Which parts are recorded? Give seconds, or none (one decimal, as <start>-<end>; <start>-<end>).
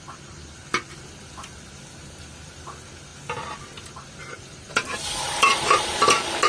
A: 0.0-4.2; 6.1-6.5